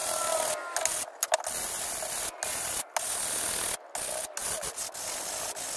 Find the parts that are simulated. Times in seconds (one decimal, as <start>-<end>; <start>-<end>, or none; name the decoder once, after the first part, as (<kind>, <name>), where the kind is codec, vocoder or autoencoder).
none